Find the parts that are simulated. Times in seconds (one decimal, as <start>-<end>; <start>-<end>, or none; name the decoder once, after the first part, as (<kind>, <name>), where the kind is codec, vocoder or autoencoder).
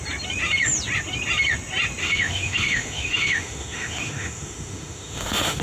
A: 2.0-5.6 (autoencoder, DAC-VAE)